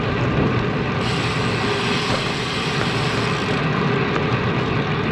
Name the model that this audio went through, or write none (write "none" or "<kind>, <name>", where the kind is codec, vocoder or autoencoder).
none